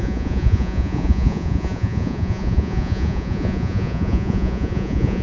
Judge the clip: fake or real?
fake